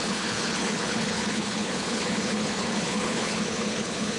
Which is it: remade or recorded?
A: remade